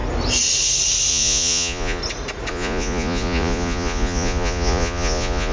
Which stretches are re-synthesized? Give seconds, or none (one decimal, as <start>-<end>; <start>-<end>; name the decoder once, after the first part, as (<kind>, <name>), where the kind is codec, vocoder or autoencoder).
1.1-2.0 (vocoder, Vocos); 2.5-5.5